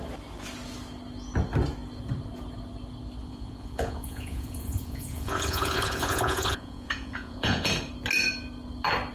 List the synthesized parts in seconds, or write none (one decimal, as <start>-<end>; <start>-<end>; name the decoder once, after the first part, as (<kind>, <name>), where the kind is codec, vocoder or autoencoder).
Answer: 3.2-7.7 (vocoder, Vocos)